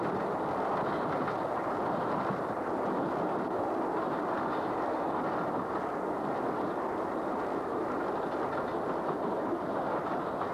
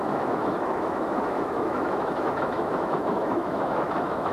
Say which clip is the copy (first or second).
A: second